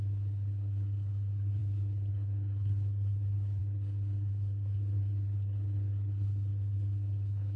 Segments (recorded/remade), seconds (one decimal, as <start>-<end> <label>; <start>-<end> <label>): 0.0-7.6 remade